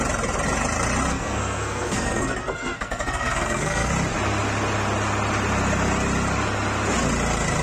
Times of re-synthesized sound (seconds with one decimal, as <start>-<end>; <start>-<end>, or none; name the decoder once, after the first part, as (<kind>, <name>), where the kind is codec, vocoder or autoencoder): 1.1-3.9 (codec, SNAC)